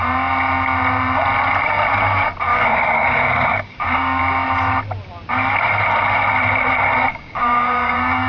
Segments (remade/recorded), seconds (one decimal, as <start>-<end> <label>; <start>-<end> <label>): 0.0-2.5 recorded; 2.5-4.2 remade; 4.2-7.1 recorded; 7.1-8.3 remade